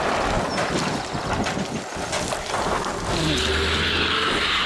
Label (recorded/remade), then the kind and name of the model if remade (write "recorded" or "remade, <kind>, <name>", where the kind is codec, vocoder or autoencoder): recorded